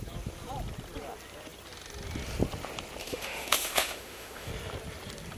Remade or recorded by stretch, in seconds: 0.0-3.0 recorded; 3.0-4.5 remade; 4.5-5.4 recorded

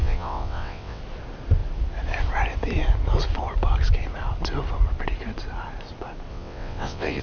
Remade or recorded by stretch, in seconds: 0.0-1.0 remade; 1.0-6.3 recorded; 6.3-7.2 remade

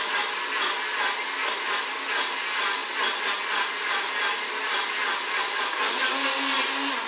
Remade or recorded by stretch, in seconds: 0.0-7.1 recorded